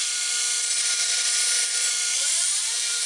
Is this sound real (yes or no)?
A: no